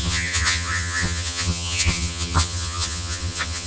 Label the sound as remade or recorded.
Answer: remade